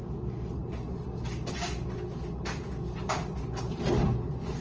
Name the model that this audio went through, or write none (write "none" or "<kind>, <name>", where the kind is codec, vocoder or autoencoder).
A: none